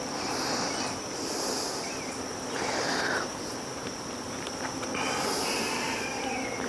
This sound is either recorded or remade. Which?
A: recorded